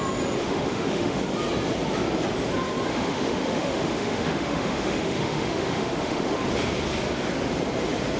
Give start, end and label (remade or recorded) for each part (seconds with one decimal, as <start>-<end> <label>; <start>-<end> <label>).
0.0-0.4 recorded; 0.4-1.2 remade; 1.2-2.9 recorded; 2.9-6.4 remade; 6.4-8.2 recorded